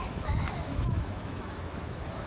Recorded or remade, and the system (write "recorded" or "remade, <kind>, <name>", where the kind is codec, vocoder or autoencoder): remade, autoencoder, DAC-VAE